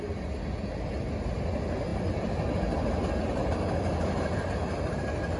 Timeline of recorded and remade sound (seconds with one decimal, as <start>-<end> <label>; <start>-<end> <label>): 0.0-5.4 recorded